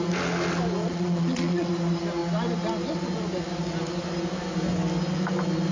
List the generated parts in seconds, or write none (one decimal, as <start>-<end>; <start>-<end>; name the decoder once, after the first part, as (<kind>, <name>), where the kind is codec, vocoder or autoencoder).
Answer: 0.8-1.7 (vocoder, Vocos)